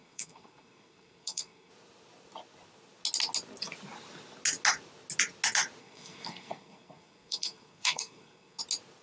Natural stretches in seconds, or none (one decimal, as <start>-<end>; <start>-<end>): 1.7-5.8; 8.6-9.0